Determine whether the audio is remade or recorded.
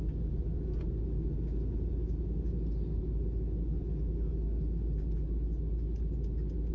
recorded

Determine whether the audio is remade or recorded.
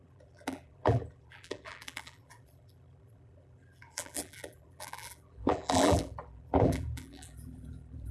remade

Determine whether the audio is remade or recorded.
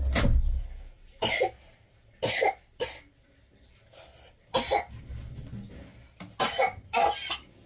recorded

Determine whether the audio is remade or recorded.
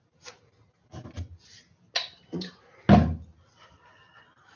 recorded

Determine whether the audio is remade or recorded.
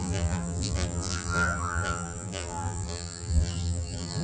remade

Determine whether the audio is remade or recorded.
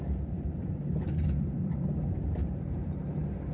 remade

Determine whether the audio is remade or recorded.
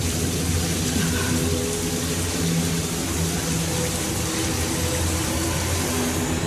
recorded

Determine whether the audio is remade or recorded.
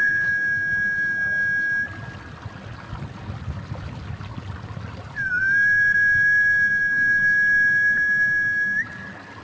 recorded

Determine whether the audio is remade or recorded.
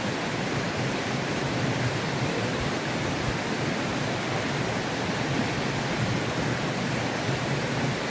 remade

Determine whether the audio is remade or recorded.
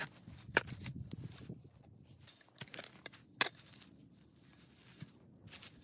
recorded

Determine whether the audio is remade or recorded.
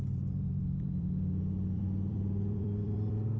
remade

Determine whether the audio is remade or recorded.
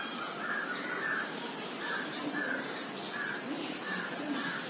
remade